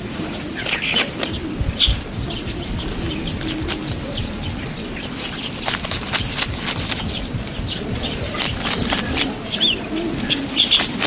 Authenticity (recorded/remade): recorded